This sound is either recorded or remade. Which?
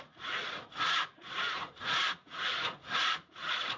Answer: remade